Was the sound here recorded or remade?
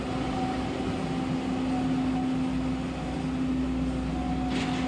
recorded